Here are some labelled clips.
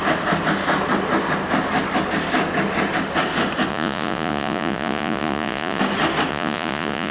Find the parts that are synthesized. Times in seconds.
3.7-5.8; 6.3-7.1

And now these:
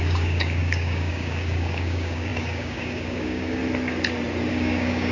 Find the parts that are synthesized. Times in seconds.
0.0-3.6; 4.5-5.1